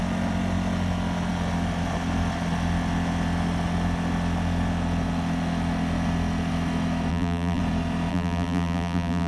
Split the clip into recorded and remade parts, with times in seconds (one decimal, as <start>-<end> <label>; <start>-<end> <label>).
0.0-7.1 recorded; 7.1-7.6 remade; 7.6-8.1 recorded; 8.1-9.3 remade